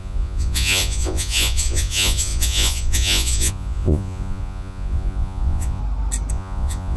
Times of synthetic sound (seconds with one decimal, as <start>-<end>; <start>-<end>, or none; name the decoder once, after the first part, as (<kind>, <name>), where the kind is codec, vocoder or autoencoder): 0.0-5.8 (vocoder, Vocos); 6.3-7.0